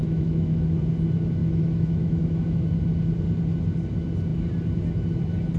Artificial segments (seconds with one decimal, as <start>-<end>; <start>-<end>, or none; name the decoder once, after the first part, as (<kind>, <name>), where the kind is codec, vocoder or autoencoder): 0.0-0.8 (autoencoder, DAC-VAE); 1.4-2.8